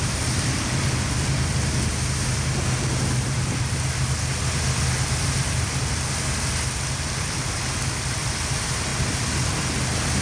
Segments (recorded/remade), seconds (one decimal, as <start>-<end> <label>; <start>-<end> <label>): 0.0-10.2 recorded

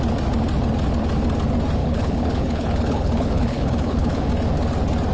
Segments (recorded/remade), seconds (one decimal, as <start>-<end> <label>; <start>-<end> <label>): 0.0-1.8 recorded; 1.8-4.3 remade; 4.3-5.1 recorded

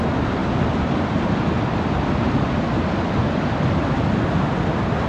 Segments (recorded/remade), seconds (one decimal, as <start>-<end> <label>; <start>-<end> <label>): 0.0-5.1 recorded

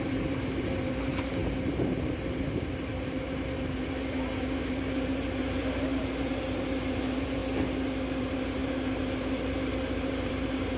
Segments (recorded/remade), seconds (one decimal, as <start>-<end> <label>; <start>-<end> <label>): 0.0-7.4 remade; 7.4-8.2 recorded; 8.2-10.8 remade

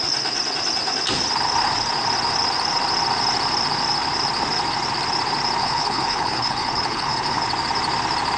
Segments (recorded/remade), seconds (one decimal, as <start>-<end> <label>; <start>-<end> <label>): 0.0-5.6 recorded; 5.6-7.4 remade; 7.4-8.4 recorded